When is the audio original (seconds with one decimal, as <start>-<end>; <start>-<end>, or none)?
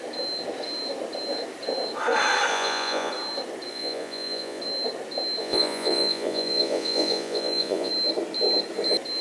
0.0-2.5; 3.1-3.7; 4.6-5.4; 7.9-9.2